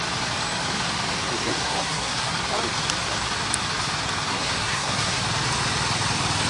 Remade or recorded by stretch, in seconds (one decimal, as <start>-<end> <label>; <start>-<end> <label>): 0.0-1.5 recorded; 1.5-2.3 remade; 2.3-4.3 recorded; 4.3-5.2 remade; 5.2-6.5 recorded